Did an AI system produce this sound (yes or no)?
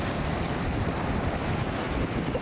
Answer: no